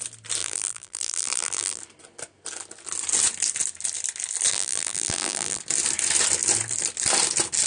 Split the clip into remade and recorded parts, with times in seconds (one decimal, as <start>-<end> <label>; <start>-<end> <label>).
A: 0.0-0.4 recorded; 0.4-1.8 remade; 1.8-4.5 recorded; 4.5-5.6 remade; 5.6-7.7 recorded